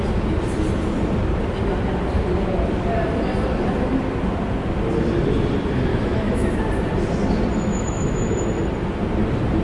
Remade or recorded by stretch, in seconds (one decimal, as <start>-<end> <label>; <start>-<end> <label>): 0.0-5.9 recorded; 5.9-6.5 remade; 6.5-7.7 recorded; 7.7-8.3 remade; 8.3-9.6 recorded